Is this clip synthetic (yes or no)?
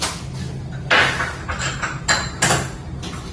no